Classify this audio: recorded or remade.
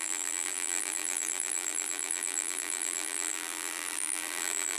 remade